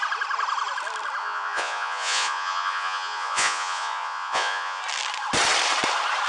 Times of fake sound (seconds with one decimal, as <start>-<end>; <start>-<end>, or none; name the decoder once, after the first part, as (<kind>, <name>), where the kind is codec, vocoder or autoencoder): 1.2-4.8 (vocoder, Vocos)